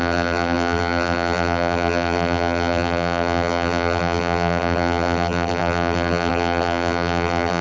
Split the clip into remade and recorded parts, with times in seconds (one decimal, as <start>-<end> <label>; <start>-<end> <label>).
0.0-7.6 remade